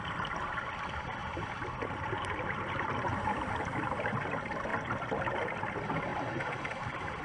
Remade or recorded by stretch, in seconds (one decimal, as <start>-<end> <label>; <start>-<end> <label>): 0.0-1.2 recorded; 1.2-3.2 remade; 3.2-7.2 recorded